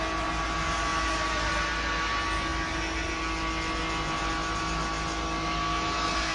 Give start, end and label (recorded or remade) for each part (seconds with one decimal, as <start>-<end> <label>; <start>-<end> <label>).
0.0-6.3 recorded